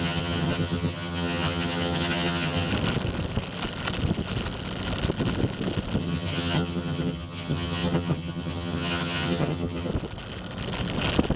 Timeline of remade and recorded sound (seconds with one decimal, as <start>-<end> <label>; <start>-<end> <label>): 0.0-2.7 remade; 2.7-6.0 recorded; 6.0-9.9 remade; 9.9-11.4 recorded